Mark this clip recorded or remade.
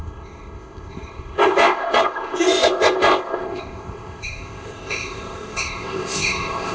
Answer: remade